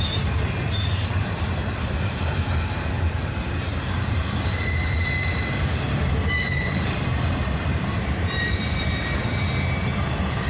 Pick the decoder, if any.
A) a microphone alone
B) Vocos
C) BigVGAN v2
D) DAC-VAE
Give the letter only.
C